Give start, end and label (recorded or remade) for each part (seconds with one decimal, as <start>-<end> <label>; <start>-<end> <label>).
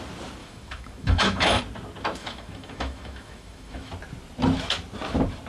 0.0-0.4 recorded; 0.4-1.6 remade; 1.6-2.2 recorded; 2.2-3.9 remade; 3.9-5.5 recorded